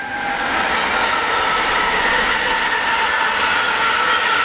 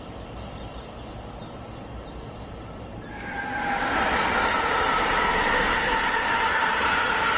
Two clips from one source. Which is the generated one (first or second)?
second